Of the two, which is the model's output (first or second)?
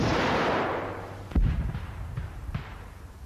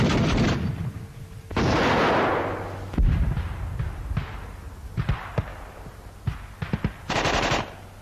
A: first